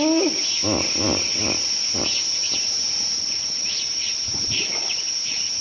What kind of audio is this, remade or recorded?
recorded